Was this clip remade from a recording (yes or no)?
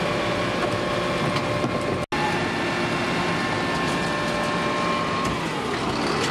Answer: no